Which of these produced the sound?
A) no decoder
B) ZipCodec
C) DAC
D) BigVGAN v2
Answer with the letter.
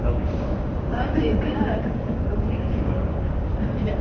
C